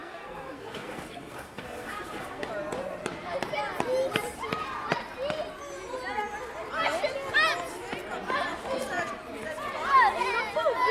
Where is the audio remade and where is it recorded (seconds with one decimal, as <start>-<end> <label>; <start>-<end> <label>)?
0.0-2.5 remade; 2.5-10.9 recorded